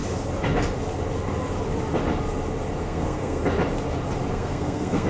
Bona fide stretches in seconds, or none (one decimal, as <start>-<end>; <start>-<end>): 0.0-2.8; 3.4-4.3